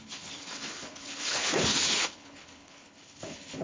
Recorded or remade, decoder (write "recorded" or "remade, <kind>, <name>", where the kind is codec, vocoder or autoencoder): remade, codec, HILCodec